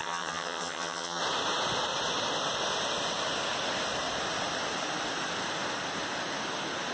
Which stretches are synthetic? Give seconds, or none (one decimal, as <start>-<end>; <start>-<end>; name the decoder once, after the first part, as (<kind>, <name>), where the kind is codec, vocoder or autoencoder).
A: 0.0-1.2 (vocoder, HiFi-GAN)